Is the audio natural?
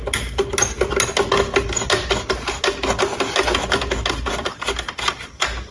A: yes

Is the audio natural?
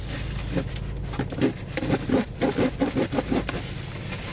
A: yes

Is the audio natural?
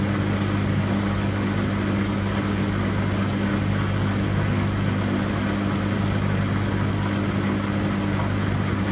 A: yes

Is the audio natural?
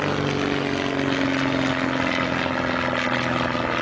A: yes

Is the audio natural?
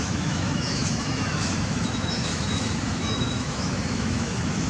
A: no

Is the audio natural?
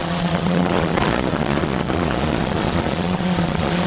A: no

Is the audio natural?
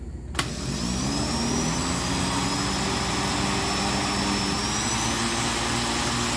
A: yes